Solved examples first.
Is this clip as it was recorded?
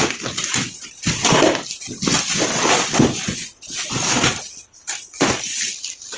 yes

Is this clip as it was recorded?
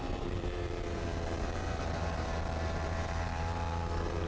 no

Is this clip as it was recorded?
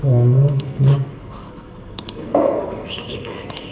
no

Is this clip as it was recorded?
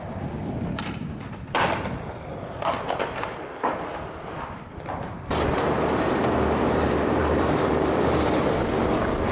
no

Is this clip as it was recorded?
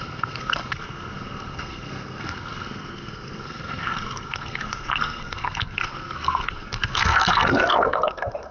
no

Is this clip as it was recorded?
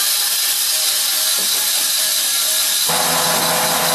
yes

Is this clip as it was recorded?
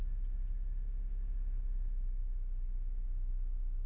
yes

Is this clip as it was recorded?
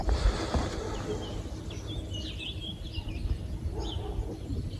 yes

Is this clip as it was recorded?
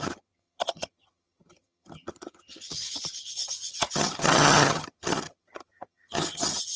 no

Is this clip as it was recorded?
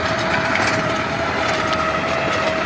no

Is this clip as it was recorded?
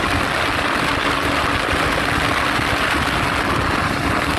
yes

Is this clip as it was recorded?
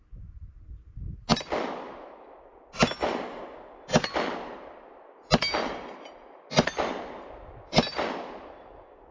yes